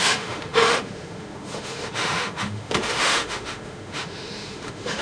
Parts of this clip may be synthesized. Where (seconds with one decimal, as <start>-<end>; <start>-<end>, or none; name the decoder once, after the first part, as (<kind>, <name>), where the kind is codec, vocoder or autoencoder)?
0.0-5.0 (autoencoder, DAC-VAE)